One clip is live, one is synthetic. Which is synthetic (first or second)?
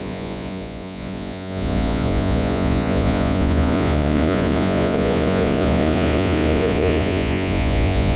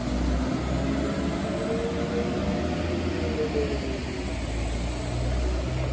first